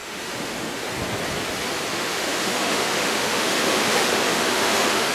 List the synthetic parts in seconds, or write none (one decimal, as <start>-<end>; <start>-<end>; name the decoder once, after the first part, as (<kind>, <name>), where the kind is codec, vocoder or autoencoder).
0.0-0.8 (autoencoder, DAC-VAE); 1.9-5.1